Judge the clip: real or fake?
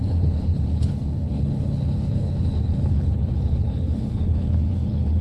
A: fake